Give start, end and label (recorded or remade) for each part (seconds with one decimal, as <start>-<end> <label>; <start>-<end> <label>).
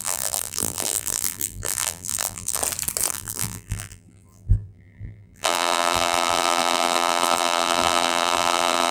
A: 0.0-2.6 remade; 2.6-3.1 recorded; 3.1-8.9 remade